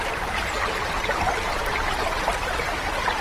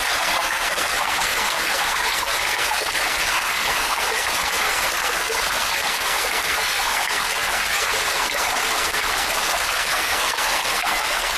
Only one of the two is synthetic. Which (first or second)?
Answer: second